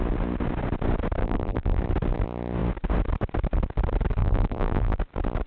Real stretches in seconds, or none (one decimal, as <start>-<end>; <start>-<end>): 0.0-1.2; 1.8-4.2; 5.0-5.5